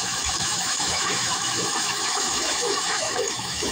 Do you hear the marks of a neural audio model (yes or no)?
yes